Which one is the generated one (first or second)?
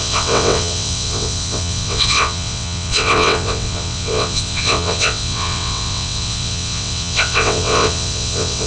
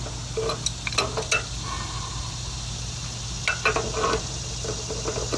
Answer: first